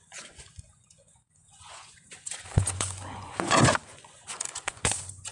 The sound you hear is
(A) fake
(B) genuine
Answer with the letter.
A